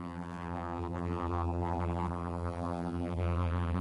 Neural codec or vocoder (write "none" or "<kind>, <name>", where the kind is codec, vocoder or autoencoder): vocoder, BigVGAN v2